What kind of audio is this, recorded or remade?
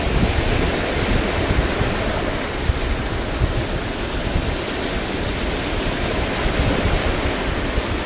recorded